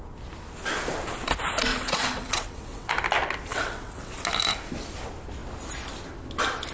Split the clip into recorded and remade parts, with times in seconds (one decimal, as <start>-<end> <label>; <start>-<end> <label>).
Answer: 0.0-1.7 recorded; 1.7-2.9 remade; 2.9-3.5 recorded; 3.5-4.1 remade; 4.1-6.7 recorded